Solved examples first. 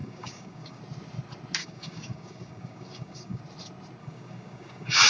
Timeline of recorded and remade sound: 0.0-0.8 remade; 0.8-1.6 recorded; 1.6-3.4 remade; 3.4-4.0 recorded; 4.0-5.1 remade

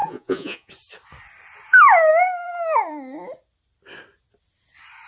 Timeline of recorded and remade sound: 0.0-0.7 remade; 0.7-5.1 recorded

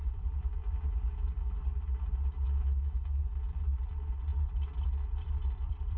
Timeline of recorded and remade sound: 0.0-0.6 remade; 0.6-3.2 recorded; 3.2-4.3 remade; 4.3-5.1 recorded; 5.1-6.0 remade

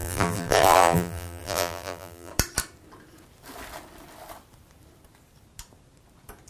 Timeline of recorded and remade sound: 0.0-2.3 remade; 2.3-6.5 recorded

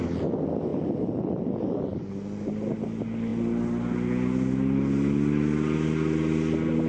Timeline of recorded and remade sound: 0.0-6.9 recorded